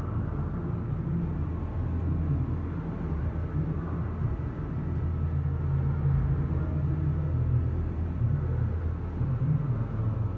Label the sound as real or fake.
real